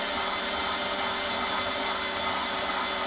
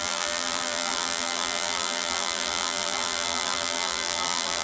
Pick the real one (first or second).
first